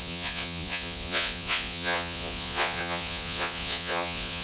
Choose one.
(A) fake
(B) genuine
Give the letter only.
A